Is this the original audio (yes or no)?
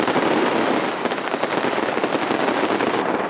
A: yes